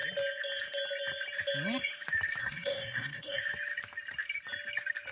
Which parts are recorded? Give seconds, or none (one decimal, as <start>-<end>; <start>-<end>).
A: 0.0-2.4; 3.4-5.1